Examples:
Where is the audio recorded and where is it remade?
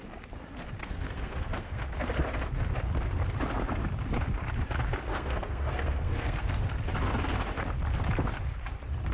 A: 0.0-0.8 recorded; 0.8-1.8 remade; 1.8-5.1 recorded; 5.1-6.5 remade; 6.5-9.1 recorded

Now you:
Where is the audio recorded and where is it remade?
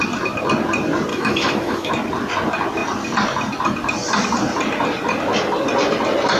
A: 0.0-1.1 recorded; 1.1-1.9 remade; 1.9-6.4 recorded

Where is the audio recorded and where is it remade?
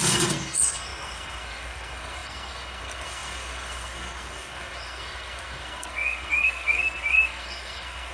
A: 0.0-8.1 remade